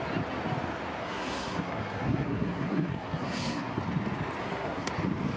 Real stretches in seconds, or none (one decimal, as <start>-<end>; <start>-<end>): 0.0-1.0; 3.8-4.4; 4.9-5.4